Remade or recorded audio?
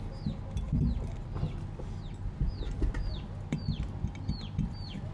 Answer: recorded